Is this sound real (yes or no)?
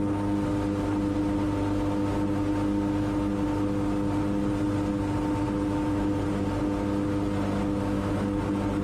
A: yes